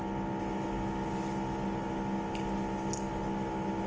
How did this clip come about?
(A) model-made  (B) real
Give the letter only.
B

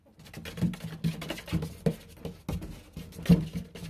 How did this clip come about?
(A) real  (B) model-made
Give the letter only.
A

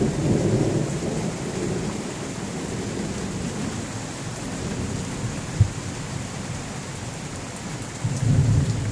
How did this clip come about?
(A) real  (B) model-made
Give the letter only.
A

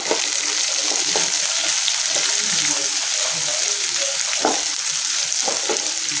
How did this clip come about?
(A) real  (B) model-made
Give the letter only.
A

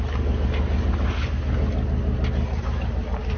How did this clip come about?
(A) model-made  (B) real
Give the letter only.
B